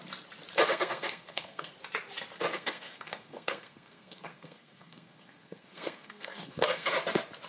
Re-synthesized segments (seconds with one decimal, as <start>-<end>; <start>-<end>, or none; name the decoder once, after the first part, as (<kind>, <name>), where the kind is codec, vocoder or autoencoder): 0.7-1.7 (codec, SNAC); 2.5-6.9

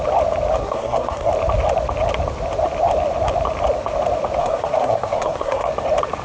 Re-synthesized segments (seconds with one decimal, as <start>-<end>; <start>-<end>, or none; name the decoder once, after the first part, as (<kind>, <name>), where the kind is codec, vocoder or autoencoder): 0.6-1.3 (codec, SNAC); 4.4-5.7

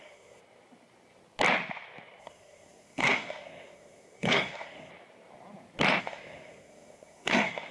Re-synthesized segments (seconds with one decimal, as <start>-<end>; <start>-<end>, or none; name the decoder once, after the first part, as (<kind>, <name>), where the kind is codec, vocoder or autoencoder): 0.0-0.4 (codec, SNAC); 2.2-4.9; 6.0-7.7